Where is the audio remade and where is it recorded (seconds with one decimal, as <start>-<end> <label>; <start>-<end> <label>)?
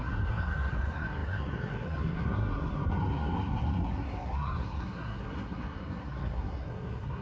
0.0-7.2 remade